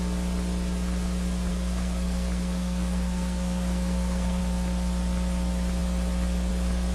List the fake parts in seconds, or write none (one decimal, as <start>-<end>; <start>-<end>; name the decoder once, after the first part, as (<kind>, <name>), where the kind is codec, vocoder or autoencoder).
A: 1.5-4.4 (codec, SNAC)